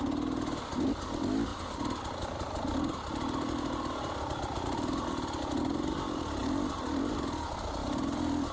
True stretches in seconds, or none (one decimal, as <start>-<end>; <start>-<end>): 0.0-1.5; 5.3-7.8